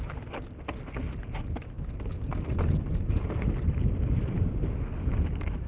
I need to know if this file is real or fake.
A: real